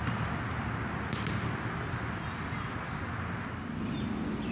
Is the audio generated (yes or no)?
no